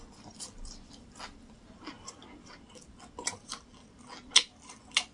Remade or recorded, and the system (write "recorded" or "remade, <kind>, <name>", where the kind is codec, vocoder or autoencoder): recorded